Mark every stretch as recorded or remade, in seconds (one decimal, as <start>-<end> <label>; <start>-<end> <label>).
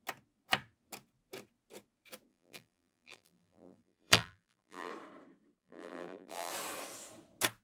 0.0-2.3 recorded; 2.3-4.9 remade; 4.9-5.6 recorded; 5.6-6.5 remade; 6.5-7.6 recorded